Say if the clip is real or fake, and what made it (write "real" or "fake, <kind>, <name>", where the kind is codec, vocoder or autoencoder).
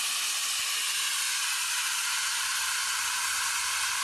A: real